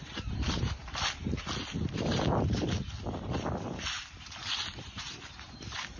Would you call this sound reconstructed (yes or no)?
no